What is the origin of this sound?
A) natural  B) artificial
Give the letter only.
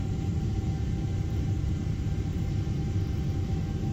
B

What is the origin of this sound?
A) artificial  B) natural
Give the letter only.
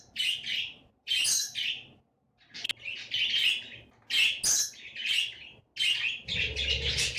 B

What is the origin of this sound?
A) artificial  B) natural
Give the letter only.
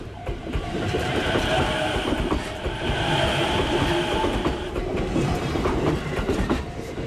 A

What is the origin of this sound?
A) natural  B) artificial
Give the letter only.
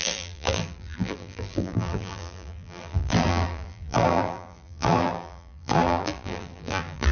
B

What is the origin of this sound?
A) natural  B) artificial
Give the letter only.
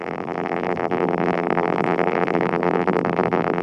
B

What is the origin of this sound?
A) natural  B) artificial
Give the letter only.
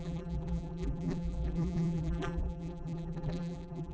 B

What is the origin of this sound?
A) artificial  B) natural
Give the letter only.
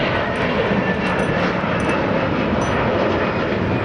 B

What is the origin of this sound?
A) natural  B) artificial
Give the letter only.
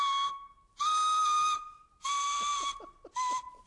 A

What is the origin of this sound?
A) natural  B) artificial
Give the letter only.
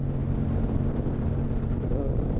B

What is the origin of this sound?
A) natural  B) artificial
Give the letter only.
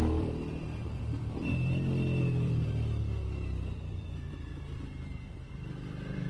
B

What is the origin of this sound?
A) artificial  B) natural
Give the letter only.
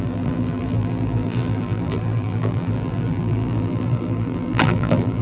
A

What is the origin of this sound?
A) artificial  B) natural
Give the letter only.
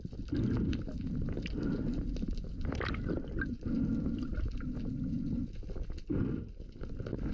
A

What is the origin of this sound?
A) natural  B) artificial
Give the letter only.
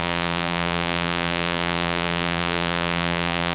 B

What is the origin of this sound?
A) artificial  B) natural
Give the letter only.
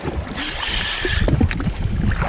B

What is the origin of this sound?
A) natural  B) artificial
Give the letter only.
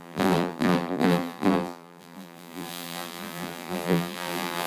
B